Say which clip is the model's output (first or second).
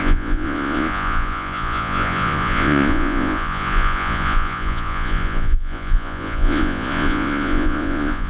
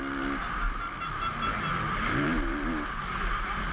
first